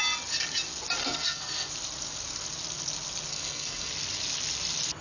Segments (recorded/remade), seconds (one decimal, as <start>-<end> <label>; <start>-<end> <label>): 0.0-1.0 recorded; 1.0-1.7 remade; 1.7-3.3 recorded; 3.3-3.9 remade; 3.9-5.0 recorded